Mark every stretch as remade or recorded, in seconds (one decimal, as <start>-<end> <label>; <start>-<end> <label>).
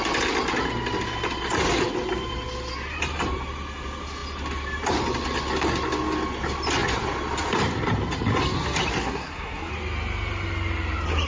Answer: 0.0-9.0 recorded; 9.0-9.7 remade; 9.7-11.3 recorded